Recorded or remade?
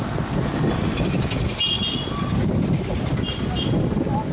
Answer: recorded